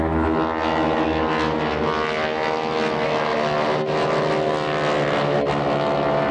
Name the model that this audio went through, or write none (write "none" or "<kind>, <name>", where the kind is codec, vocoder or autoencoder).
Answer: none